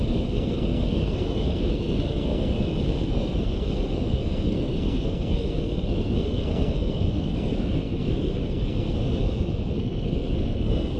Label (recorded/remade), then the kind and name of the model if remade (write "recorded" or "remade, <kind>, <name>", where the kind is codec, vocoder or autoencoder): remade, codec, SNAC